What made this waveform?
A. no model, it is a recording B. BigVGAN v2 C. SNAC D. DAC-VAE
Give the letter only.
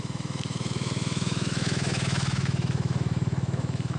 D